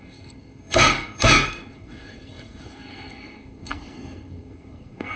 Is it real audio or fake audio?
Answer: fake